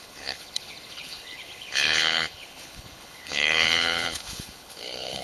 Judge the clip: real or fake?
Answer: fake